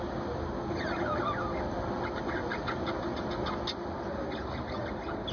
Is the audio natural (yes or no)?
yes